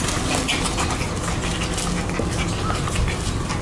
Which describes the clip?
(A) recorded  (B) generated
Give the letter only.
A